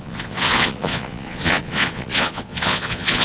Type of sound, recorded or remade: remade